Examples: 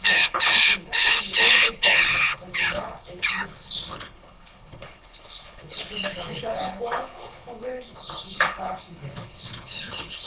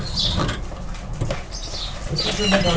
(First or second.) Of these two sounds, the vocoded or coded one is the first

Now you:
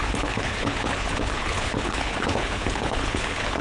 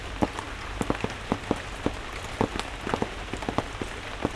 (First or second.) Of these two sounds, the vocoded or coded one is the first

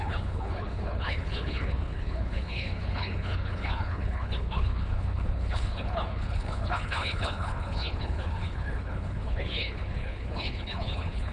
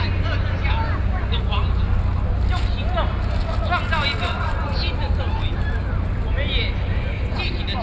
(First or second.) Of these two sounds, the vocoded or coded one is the first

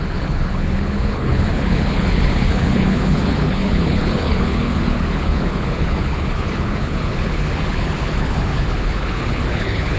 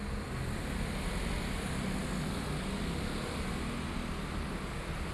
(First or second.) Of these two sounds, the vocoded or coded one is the first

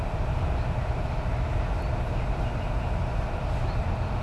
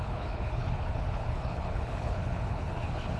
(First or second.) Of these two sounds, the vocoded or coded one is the second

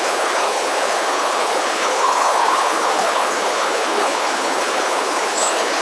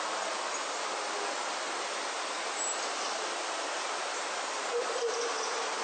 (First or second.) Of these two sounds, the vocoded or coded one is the first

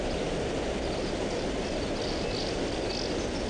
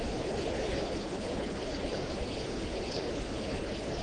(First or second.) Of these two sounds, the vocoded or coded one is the second